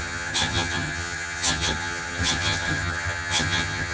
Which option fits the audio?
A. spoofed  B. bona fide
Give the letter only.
A